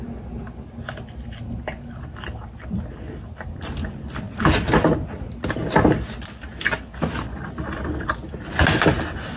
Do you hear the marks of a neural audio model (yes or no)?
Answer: no